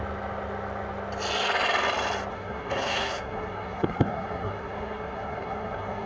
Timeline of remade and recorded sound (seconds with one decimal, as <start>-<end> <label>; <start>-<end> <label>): 0.0-2.3 recorded; 2.3-6.1 remade